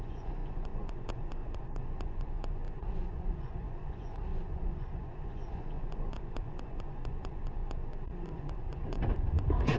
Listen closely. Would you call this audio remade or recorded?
remade